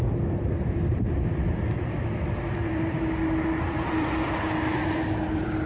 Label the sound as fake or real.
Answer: fake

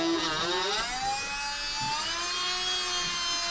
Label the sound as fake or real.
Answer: real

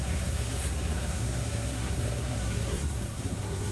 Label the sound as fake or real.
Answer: fake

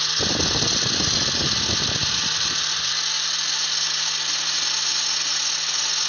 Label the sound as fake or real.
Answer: real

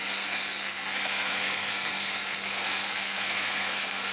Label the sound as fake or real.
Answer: fake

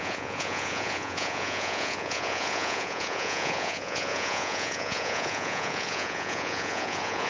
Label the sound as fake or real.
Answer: fake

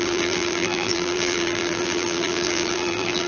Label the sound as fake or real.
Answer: fake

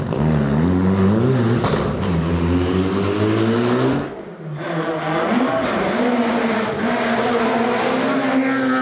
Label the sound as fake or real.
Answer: real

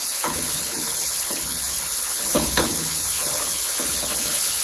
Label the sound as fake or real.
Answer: fake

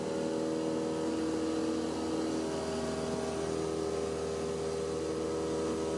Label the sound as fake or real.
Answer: real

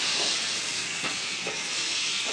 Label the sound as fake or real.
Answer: fake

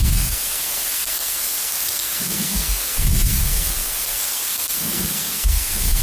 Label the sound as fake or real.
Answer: fake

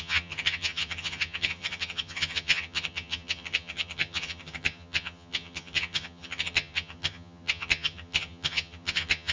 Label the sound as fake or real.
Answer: fake